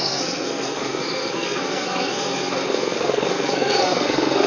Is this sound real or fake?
fake